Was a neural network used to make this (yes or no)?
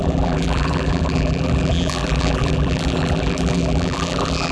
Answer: yes